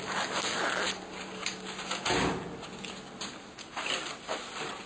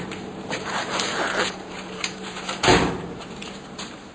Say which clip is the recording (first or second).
first